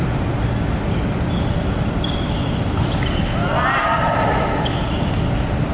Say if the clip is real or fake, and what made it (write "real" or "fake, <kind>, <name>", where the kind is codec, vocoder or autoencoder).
real